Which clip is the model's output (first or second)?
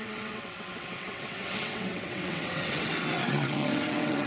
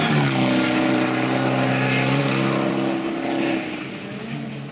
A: first